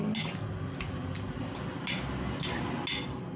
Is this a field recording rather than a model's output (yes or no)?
yes